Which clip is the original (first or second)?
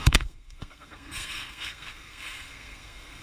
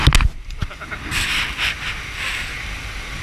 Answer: second